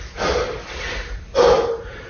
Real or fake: real